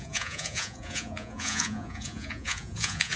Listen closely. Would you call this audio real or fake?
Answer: fake